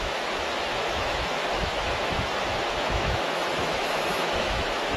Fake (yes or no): yes